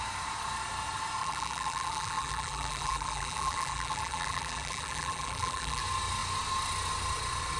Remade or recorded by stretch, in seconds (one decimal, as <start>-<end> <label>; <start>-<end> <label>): 0.0-1.2 recorded; 1.2-5.8 remade; 5.8-7.6 recorded

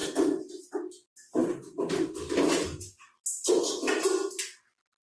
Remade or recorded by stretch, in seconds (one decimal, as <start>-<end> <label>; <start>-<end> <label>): 0.0-5.0 recorded

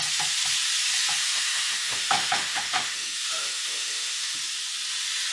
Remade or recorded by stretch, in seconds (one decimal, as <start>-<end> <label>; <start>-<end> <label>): 0.0-1.2 recorded; 1.2-4.4 remade; 4.4-5.3 recorded

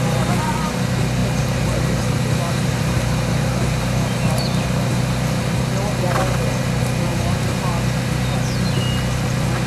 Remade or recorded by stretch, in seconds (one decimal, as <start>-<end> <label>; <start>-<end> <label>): 0.0-1.2 recorded; 1.2-5.6 remade; 5.6-7.1 recorded; 7.1-8.0 remade; 8.0-9.7 recorded

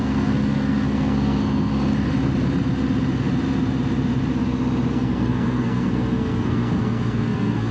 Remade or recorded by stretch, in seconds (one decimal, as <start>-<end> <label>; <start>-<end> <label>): 0.0-1.7 remade; 1.7-4.9 recorded; 4.9-7.7 remade

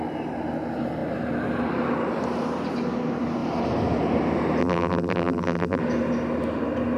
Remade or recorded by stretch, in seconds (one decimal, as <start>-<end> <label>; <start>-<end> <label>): 0.0-4.6 recorded; 4.6-5.8 remade; 5.8-7.0 recorded

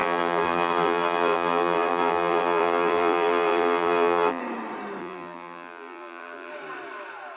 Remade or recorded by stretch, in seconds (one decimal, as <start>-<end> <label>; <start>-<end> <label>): 0.0-4.4 remade; 4.4-5.0 recorded; 5.0-6.5 remade; 6.5-7.4 recorded

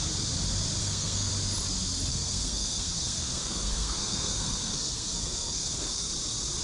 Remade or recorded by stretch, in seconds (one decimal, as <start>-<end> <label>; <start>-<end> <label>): 0.0-0.8 recorded; 0.8-1.3 remade; 1.3-2.1 recorded; 2.1-6.1 remade; 6.1-6.6 recorded